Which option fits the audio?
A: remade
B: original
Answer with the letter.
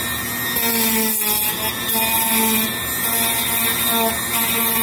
B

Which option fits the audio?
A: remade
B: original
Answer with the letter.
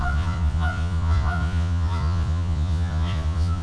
A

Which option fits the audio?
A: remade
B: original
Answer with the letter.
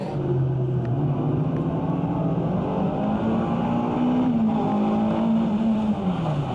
B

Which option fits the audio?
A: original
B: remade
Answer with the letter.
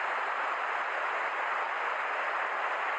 A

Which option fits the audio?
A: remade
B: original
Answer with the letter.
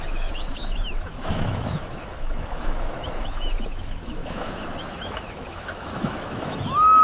A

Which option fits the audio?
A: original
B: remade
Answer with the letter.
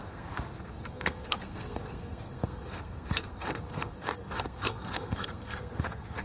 B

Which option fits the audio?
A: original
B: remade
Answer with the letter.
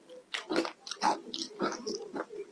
A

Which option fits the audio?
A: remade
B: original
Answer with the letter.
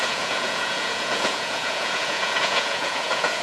A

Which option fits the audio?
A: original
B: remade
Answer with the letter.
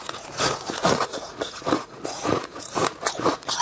B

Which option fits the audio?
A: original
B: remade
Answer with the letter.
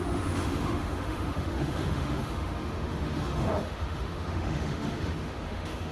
B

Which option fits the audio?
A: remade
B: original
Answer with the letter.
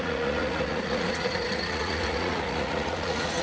A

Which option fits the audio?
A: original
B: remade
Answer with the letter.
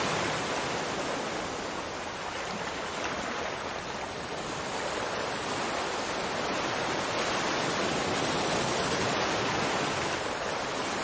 A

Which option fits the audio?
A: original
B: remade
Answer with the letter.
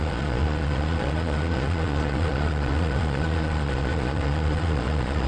B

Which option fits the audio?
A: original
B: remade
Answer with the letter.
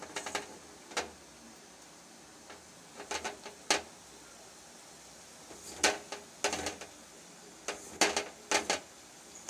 A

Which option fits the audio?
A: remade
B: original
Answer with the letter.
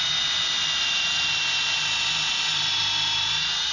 B